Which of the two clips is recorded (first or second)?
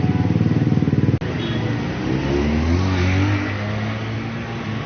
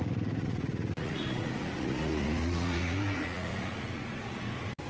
first